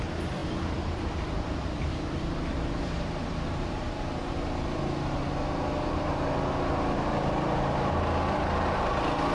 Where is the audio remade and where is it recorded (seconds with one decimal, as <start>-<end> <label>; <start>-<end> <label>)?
0.0-0.4 recorded; 0.4-3.8 remade; 3.8-9.3 recorded